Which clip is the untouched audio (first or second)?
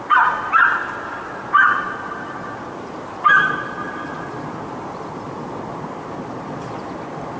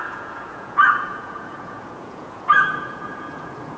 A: first